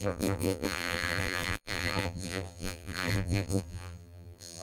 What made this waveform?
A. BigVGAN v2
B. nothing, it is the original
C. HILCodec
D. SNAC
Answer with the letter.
A